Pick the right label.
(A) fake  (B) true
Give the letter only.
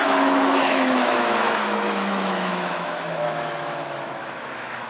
A